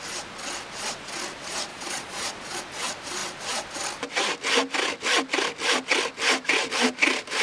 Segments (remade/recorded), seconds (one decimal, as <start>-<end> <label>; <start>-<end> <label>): 0.0-1.7 recorded; 1.7-2.6 remade; 2.6-7.4 recorded